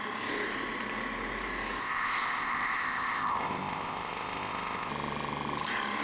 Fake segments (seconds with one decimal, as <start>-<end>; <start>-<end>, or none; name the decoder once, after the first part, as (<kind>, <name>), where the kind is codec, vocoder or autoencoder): 1.8-4.9 (codec, ZipCodec)